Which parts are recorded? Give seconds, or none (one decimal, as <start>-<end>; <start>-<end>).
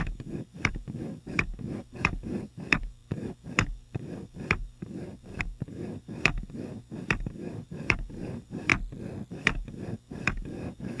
8.7-9.3